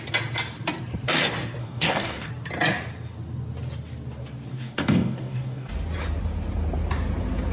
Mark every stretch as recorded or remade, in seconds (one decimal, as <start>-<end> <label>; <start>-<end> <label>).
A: 0.0-1.6 recorded; 1.6-2.3 remade; 2.3-4.5 recorded; 4.5-5.7 remade; 5.7-7.5 recorded